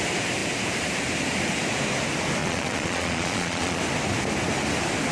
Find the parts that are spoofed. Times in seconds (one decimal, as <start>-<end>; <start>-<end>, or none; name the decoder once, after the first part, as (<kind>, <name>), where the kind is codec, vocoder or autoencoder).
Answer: 2.4-3.8 (vocoder, Vocos)